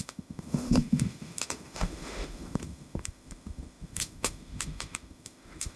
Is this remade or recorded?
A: remade